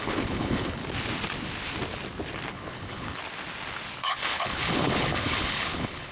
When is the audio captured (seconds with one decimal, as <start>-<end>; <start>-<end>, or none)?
0.8-2.5; 3.2-4.0